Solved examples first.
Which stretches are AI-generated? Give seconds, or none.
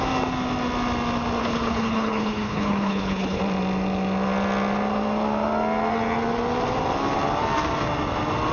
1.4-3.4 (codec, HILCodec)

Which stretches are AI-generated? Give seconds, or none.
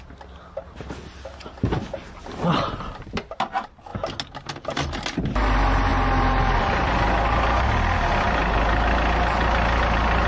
none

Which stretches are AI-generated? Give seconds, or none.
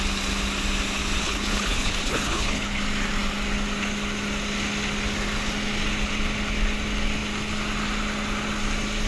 1.2-2.8 (codec, HILCodec)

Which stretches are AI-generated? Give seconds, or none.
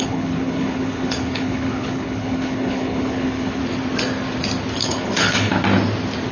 0.0-3.6 (codec, HILCodec); 4.8-5.5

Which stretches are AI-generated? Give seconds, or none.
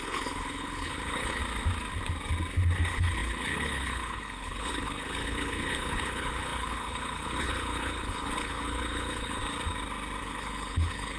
0.0-1.4 (codec, HILCodec); 2.8-9.4; 10.2-11.2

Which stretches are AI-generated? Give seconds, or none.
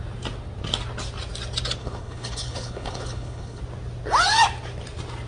1.8-3.6 (codec, HILCodec)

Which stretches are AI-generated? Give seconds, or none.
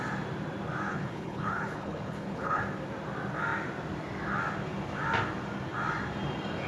0.9-2.6 (codec, HILCodec)